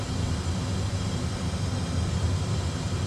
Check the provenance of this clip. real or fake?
real